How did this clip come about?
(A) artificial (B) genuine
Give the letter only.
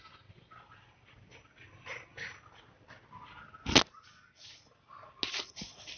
B